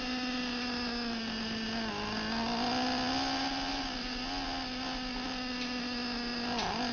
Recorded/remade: recorded